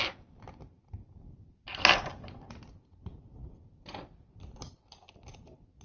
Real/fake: real